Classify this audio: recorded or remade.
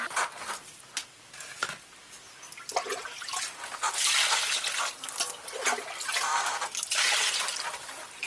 recorded